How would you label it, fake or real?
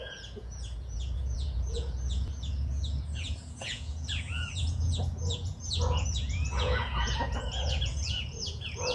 fake